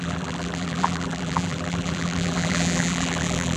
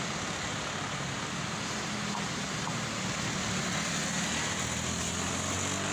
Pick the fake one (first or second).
first